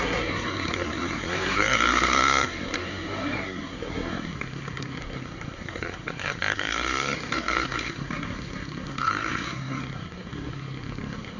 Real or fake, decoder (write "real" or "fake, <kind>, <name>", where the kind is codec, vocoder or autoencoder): fake, codec, SNAC